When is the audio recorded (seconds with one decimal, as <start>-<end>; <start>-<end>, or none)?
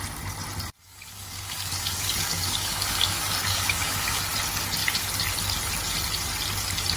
0.0-0.8; 4.2-7.0